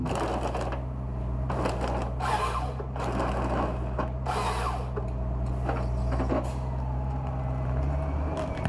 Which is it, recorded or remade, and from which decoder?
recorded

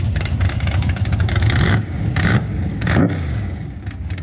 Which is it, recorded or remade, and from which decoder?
remade, codec, DAC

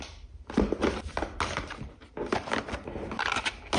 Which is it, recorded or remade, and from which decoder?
recorded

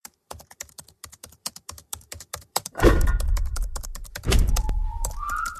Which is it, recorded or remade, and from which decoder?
remade, vocoder, BigVGAN v2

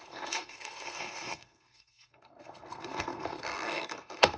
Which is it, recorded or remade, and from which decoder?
remade, codec, SNAC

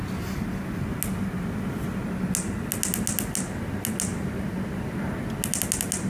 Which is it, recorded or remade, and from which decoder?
recorded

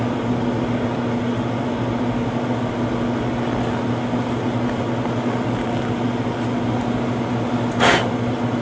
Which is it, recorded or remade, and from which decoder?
recorded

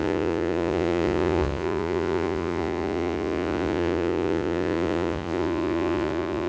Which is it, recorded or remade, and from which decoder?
remade, vocoder, Vocos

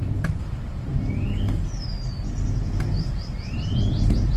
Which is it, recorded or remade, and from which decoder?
remade, vocoder, BigVGAN v2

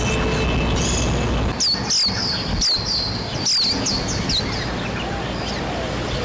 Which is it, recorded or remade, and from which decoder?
recorded